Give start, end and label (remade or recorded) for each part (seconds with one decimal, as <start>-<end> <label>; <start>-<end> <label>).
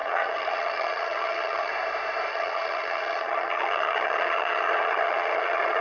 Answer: 0.0-1.7 remade; 1.7-2.3 recorded; 2.3-5.8 remade